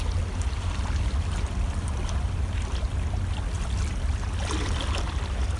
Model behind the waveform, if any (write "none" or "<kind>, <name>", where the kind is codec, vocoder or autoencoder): none